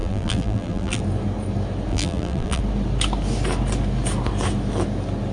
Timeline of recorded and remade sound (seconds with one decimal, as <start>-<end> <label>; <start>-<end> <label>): 0.0-1.0 remade; 1.0-1.9 recorded; 1.9-2.6 remade; 2.6-5.3 recorded